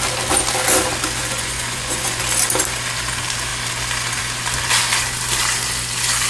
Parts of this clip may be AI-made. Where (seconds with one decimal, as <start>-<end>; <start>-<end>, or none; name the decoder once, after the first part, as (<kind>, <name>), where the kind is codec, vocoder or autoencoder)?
1.2-2.2 (vocoder, Vocos)